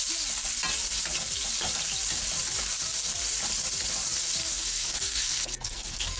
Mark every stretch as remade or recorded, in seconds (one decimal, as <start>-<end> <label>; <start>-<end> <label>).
0.0-4.4 recorded; 4.4-6.2 remade